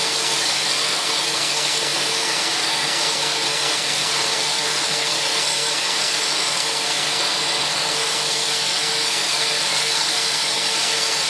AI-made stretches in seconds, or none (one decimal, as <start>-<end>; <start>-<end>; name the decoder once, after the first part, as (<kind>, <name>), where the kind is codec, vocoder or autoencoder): 0.0-11.3 (codec, SNAC)